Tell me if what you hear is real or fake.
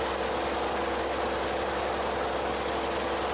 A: real